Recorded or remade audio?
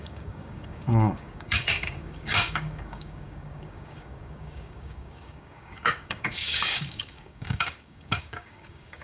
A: remade